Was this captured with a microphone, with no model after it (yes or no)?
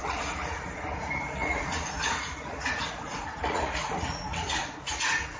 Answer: no